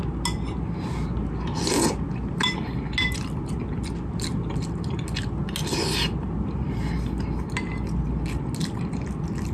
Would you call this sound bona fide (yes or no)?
yes